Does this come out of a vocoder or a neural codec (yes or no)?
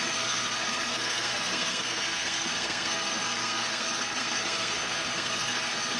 yes